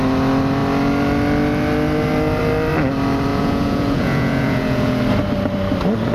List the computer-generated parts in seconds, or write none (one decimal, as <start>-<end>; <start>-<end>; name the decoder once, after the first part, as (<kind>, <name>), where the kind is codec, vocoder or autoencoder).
3.3-5.0 (vocoder, Vocos)